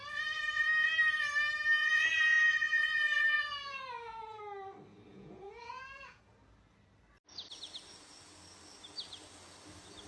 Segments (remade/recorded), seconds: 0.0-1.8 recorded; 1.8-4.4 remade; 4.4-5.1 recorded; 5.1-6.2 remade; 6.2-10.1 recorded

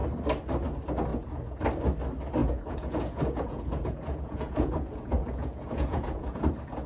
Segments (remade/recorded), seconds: 0.0-1.1 recorded; 1.1-1.6 remade; 1.6-2.4 recorded; 2.4-6.5 remade; 6.5-6.9 recorded

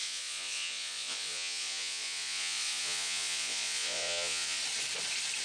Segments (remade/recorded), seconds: 0.0-4.6 remade; 4.6-5.4 recorded

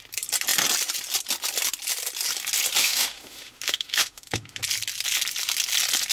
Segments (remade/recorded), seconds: 0.0-2.8 recorded; 2.8-4.6 remade; 4.6-6.1 recorded

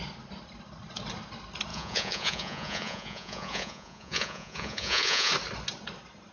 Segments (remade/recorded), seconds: 0.0-1.7 recorded; 1.7-5.3 remade; 5.3-6.3 recorded